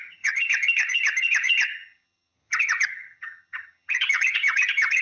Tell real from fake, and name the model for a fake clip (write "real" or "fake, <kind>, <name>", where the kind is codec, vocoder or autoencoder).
fake, vocoder, HiFi-GAN